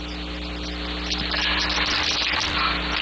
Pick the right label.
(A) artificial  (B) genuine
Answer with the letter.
B